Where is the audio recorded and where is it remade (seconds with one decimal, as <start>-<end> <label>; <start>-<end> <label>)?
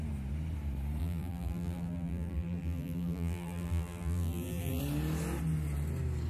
0.0-1.0 recorded; 1.0-4.8 remade; 4.8-6.3 recorded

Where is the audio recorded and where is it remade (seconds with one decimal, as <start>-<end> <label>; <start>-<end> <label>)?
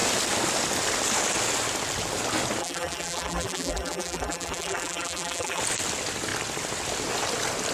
0.0-2.6 recorded; 2.6-5.6 remade; 5.6-7.7 recorded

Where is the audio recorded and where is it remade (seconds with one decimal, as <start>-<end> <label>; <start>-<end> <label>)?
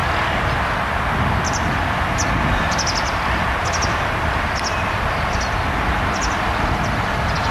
0.0-7.5 recorded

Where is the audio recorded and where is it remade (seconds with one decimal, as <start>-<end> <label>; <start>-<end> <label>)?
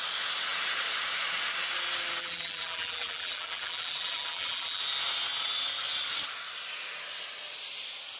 0.0-2.2 recorded; 2.2-4.8 remade; 4.8-8.2 recorded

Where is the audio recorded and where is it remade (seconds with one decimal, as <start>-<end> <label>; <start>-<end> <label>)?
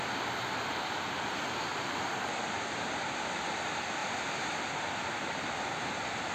0.0-1.7 recorded; 1.7-3.0 remade; 3.0-4.0 recorded; 4.0-4.6 remade; 4.6-6.3 recorded